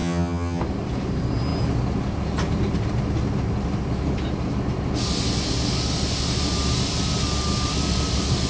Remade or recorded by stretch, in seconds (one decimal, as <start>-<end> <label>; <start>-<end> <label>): 0.0-0.6 remade; 0.6-8.5 recorded

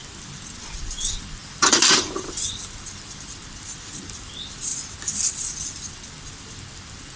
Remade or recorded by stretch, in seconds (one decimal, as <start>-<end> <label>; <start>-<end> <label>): 0.0-4.7 remade; 4.7-5.3 recorded; 5.3-7.2 remade

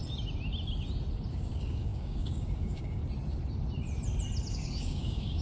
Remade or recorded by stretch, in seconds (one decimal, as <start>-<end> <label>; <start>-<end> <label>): 0.0-1.3 recorded; 1.3-3.0 remade; 3.0-4.5 recorded; 4.5-5.4 remade

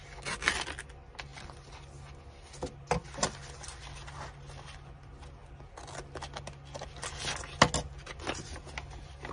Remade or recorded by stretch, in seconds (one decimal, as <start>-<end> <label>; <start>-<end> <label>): 0.0-9.3 recorded

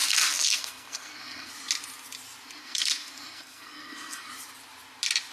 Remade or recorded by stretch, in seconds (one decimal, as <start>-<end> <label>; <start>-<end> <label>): 0.0-1.5 remade; 1.5-2.6 recorded; 2.6-4.3 remade; 4.3-5.3 recorded

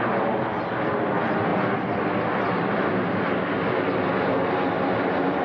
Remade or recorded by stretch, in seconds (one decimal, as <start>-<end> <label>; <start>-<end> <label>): 0.0-5.4 recorded

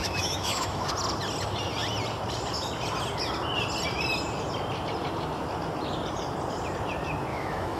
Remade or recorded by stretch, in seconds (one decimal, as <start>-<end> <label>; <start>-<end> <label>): 0.0-0.9 remade; 0.9-7.3 recorded; 7.3-7.8 remade